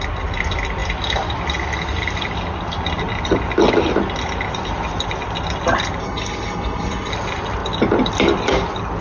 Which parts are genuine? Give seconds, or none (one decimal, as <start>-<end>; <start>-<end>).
0.0-6.0; 7.1-9.0